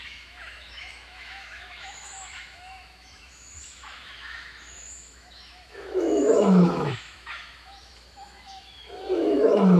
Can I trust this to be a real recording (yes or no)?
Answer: no